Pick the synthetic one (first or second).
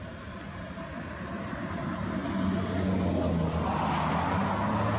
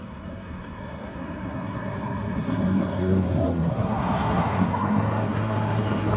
second